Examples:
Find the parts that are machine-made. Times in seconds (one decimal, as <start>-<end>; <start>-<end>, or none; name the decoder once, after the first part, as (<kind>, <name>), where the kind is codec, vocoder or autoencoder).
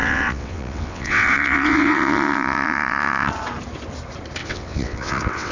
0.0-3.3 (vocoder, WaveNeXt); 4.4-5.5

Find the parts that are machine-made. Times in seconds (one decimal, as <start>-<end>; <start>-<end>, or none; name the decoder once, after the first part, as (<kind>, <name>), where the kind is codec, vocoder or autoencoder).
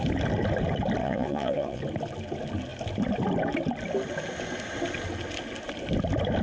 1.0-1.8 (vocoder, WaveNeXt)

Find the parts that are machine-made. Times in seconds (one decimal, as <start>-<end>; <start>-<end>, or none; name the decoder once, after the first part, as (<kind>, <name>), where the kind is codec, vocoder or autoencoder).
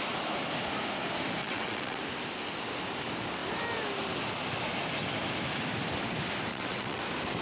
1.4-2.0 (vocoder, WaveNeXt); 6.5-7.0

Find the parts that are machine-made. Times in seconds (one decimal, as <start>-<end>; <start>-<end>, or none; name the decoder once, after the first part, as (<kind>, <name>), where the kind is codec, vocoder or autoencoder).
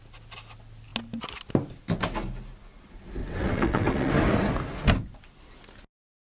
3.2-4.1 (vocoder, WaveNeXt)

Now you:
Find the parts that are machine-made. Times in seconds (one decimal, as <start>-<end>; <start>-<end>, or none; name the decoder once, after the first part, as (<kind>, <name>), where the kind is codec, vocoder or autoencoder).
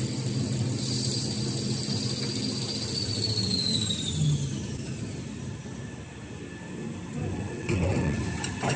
7.3-8.2 (vocoder, WaveNeXt)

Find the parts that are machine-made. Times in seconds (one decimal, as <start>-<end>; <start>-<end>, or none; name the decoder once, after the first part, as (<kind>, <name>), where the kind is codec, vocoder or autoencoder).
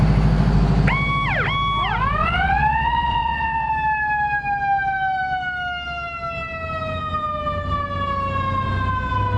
2.2-3.7 (vocoder, WaveNeXt)